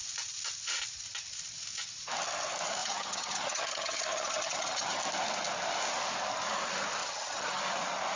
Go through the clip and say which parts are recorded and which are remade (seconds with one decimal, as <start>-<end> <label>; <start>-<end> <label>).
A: 0.0-2.8 recorded; 2.8-5.0 remade; 5.0-7.0 recorded; 7.0-7.6 remade; 7.6-8.2 recorded

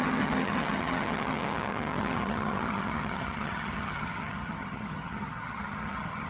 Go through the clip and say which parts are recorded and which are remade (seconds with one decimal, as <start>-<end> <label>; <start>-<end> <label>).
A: 0.0-6.3 remade

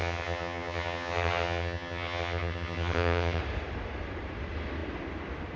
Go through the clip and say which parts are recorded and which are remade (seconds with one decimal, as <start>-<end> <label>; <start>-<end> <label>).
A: 0.0-3.4 remade; 3.4-5.6 recorded

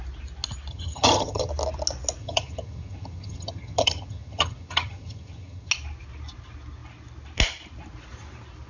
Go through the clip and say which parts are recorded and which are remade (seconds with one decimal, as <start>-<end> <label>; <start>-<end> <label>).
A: 0.0-0.7 recorded; 0.7-1.5 remade; 1.5-2.2 recorded; 2.2-5.7 remade; 5.7-8.7 recorded

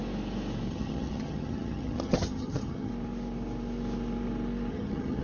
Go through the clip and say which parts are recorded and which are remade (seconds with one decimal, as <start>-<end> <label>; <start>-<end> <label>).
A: 0.0-0.7 recorded; 0.7-2.9 remade; 2.9-4.7 recorded; 4.7-5.2 remade

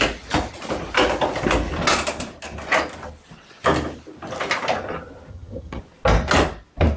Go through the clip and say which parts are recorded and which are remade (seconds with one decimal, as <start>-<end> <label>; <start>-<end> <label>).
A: 0.0-5.3 recorded; 5.3-5.8 remade; 5.8-7.0 recorded

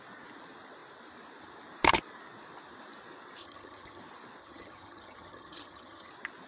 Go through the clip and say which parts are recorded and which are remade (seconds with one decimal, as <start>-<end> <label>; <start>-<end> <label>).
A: 0.0-3.4 recorded; 3.4-4.0 remade; 4.0-4.4 recorded; 4.4-6.1 remade; 6.1-6.5 recorded